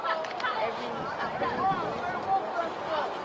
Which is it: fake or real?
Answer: real